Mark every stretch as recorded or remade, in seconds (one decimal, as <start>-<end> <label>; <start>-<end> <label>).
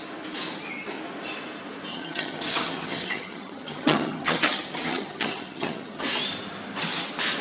0.0-1.9 recorded; 1.9-6.0 remade; 6.0-7.4 recorded